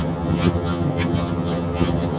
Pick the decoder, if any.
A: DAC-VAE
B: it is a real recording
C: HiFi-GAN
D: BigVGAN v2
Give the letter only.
C